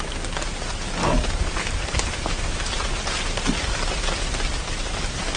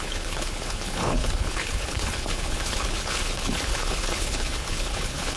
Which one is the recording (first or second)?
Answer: first